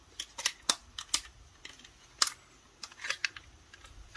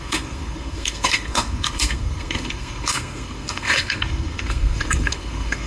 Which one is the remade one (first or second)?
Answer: second